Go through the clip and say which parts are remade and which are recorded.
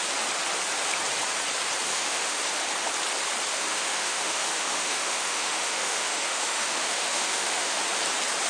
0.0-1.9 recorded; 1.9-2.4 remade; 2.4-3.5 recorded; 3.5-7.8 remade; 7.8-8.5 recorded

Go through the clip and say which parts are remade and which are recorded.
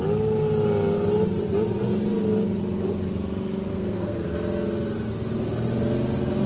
0.0-3.7 recorded; 3.7-4.3 remade; 4.3-6.5 recorded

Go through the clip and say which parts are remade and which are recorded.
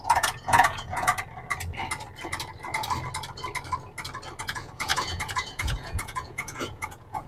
0.0-1.1 remade; 1.1-4.4 recorded; 4.4-7.3 remade